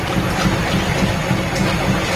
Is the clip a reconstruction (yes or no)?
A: no